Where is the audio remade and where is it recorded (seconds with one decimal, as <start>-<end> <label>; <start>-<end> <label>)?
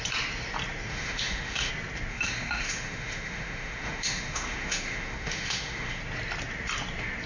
0.0-0.9 recorded; 0.9-1.7 remade; 1.7-2.1 recorded; 2.1-6.0 remade; 6.0-7.3 recorded